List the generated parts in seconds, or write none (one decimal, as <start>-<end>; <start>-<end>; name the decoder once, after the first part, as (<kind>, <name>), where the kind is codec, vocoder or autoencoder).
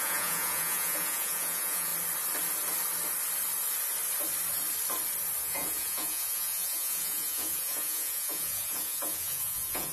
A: 0.0-1.9 (vocoder, Vocos); 5.4-9.9